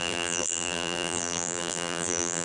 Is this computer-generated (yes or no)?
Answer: yes